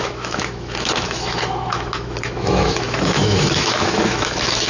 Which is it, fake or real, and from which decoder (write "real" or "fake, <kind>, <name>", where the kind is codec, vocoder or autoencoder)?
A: fake, autoencoder, DAC-VAE